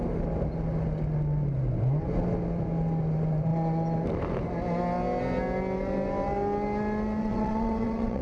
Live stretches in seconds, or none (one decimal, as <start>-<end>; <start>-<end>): 0.0-7.2